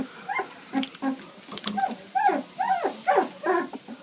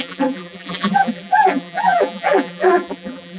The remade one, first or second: second